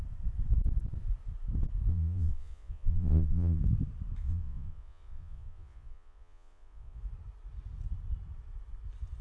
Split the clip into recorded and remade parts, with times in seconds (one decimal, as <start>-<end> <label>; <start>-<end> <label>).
0.0-1.9 recorded; 1.9-3.6 remade; 3.6-4.2 recorded; 4.2-7.0 remade; 7.0-9.2 recorded